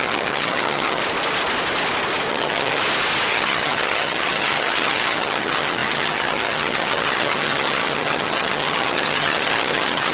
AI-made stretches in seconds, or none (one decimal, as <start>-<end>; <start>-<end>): 0.0-1.0; 2.3-2.8; 3.3-10.1